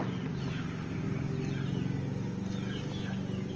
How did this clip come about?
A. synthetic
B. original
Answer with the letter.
B